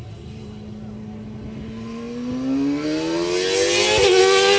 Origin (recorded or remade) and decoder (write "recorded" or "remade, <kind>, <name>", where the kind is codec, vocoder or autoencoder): recorded